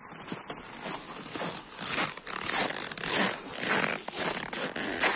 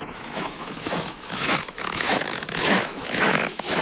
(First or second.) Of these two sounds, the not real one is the second